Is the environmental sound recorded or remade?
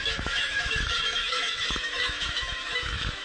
remade